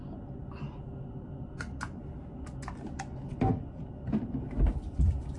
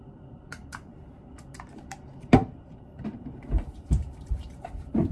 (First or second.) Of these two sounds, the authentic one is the first